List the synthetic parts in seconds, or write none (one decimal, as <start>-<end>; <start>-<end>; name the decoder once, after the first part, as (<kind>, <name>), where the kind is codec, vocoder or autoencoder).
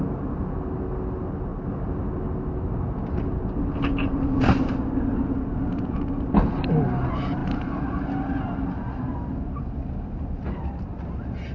none